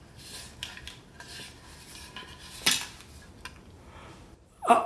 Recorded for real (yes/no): yes